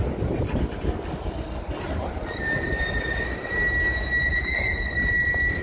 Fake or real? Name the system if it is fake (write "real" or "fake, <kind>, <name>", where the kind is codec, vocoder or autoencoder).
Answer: real